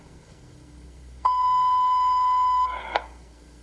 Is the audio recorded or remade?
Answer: remade